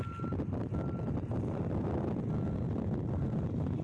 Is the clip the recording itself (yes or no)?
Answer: yes